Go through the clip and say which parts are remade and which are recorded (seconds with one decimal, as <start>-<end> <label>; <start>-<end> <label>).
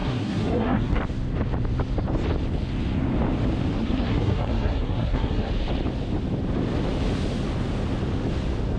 0.0-1.0 remade; 1.0-3.7 recorded; 3.7-5.5 remade; 5.5-8.8 recorded